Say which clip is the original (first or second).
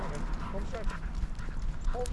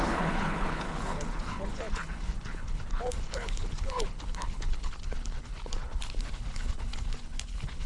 first